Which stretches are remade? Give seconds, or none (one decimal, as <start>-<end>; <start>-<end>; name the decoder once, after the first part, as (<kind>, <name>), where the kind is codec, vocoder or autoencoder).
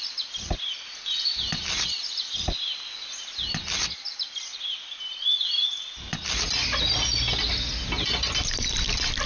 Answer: none